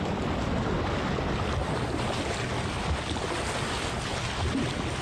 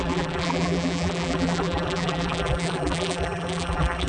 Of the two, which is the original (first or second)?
first